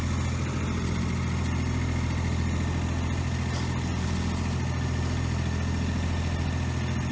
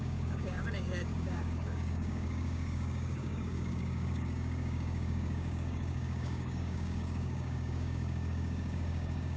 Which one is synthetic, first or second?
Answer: second